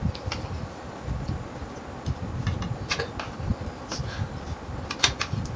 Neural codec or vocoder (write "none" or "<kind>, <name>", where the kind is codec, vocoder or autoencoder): none